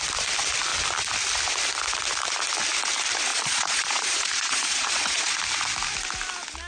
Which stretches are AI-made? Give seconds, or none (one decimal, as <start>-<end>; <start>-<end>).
3.3-5.3